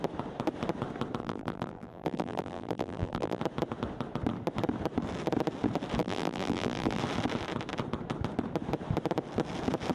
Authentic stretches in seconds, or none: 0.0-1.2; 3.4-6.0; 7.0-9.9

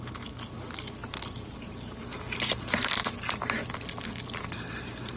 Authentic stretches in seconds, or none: 0.0-5.2